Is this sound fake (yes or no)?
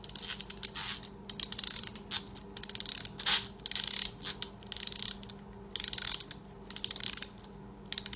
no